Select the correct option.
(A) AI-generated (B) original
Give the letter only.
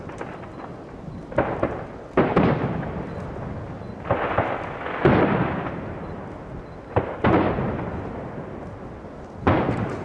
B